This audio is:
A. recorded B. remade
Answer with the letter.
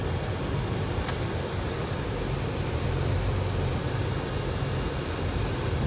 A